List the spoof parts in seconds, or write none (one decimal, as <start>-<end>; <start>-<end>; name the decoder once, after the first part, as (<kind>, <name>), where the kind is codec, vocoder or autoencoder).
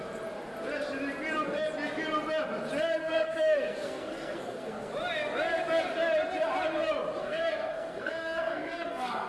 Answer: 3.0-4.9 (codec, SNAC); 7.2-9.3